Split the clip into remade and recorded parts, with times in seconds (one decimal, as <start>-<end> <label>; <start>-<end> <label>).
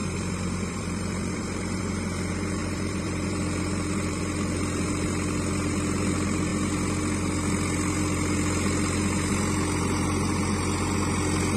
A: 0.0-1.8 remade; 1.8-2.6 recorded; 2.6-4.2 remade; 4.2-11.6 recorded